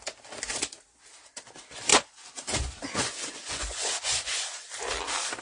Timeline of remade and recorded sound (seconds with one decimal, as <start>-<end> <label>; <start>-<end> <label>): 0.0-1.9 recorded; 1.9-4.7 remade; 4.7-5.4 recorded